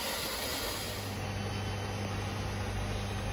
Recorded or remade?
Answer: recorded